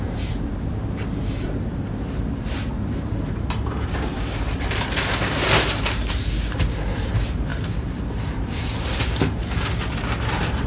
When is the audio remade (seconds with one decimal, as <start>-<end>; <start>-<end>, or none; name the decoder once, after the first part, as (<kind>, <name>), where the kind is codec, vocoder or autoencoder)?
0.0-7.5 (vocoder, BigVGAN v2); 8.1-9.4